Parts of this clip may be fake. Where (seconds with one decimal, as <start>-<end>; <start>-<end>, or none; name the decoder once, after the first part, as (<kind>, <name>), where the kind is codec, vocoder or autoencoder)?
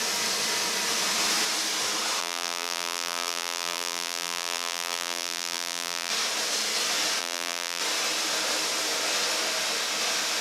2.2-6.1 (vocoder, BigVGAN v2); 7.2-7.8